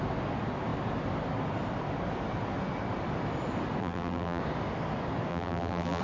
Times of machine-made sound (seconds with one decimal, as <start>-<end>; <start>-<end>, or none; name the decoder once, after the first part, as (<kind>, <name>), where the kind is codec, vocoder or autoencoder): 3.8-4.4 (vocoder, BigVGAN v2); 5.3-6.0